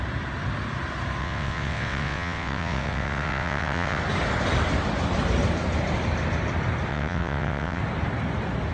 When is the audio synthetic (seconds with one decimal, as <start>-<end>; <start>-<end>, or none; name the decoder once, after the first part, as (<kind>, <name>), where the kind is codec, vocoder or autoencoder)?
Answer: 1.2-4.0 (vocoder, WaveNeXt); 6.9-7.8